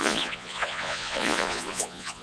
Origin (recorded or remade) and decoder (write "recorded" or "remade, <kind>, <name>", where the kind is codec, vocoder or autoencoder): remade, vocoder, Vocos